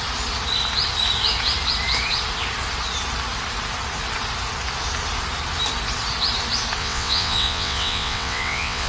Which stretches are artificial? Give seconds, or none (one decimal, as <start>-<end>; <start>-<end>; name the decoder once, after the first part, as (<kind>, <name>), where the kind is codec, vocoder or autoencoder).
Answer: 6.8-8.9 (vocoder, WaveNeXt)